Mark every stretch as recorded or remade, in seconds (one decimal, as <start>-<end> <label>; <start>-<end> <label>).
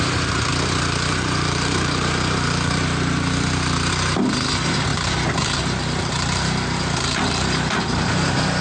0.0-0.5 recorded; 0.5-3.9 remade; 3.9-4.9 recorded; 4.9-8.6 remade